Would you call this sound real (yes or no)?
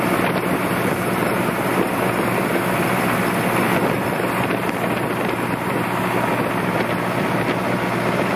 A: yes